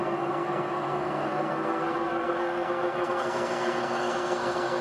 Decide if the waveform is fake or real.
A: fake